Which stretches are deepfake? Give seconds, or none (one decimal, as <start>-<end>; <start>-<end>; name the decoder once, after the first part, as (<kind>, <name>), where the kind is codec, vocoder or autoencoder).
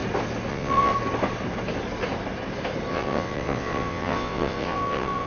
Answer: 0.5-0.9 (vocoder, WaveNeXt); 2.9-5.3